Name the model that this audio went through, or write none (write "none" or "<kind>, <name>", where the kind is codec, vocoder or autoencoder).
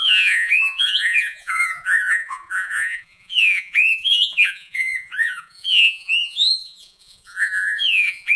vocoder, Vocos